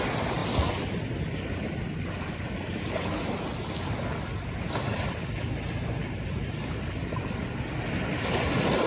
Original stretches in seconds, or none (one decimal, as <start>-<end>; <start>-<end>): 0.0-8.9